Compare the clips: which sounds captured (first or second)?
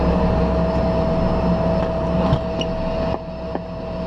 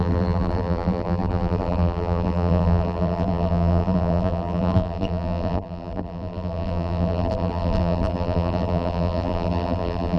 first